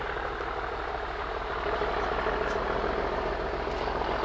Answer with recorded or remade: recorded